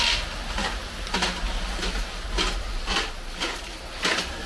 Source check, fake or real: real